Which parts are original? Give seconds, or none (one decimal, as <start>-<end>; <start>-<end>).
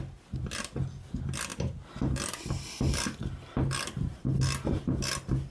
0.0-5.5